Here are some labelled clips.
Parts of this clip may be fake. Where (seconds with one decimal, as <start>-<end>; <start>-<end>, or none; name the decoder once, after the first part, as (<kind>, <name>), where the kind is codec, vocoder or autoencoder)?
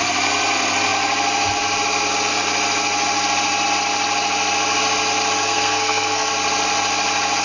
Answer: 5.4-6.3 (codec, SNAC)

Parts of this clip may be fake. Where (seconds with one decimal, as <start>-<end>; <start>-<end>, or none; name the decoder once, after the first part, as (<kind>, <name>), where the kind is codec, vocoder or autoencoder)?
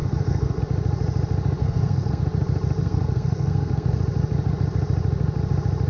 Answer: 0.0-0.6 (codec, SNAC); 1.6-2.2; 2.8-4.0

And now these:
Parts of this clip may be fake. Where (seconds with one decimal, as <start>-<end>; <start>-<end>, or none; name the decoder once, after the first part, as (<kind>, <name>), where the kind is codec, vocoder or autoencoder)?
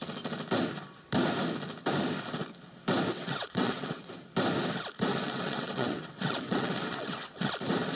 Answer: 3.1-4.1 (vocoder, WaveNeXt); 5.1-7.5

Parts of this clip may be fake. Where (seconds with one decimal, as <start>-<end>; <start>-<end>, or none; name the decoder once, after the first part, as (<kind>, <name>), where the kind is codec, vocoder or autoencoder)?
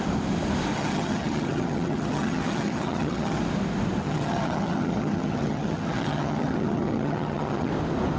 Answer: 0.7-3.4 (vocoder, HiFi-GAN); 4.0-7.7